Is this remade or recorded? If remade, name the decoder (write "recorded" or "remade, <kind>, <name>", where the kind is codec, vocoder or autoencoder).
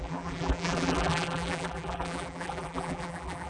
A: remade, vocoder, BigVGAN v2